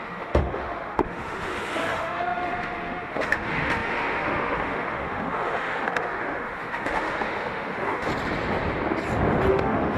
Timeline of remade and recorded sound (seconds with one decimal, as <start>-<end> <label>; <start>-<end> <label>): 0.0-8.1 remade; 8.1-9.5 recorded; 9.5-10.0 remade

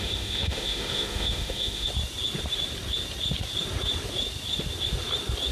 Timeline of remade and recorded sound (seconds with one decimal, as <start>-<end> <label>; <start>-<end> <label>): 0.0-1.9 remade; 1.9-5.5 recorded

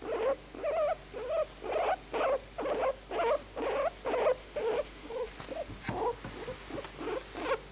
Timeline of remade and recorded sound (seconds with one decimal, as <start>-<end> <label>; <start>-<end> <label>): 0.0-4.4 recorded; 4.4-5.3 remade; 5.3-7.7 recorded

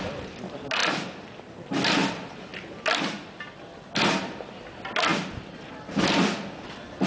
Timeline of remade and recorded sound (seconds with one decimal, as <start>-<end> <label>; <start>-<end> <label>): 0.0-7.1 recorded

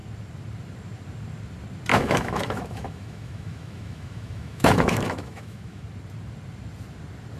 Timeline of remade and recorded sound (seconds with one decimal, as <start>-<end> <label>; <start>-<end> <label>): 0.0-1.9 recorded; 1.9-5.8 remade; 5.8-7.4 recorded

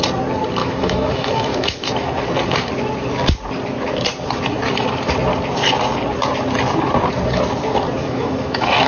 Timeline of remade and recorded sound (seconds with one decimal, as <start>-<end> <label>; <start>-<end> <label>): 0.0-0.6 recorded; 0.6-1.9 remade; 1.9-8.0 recorded; 8.0-8.9 remade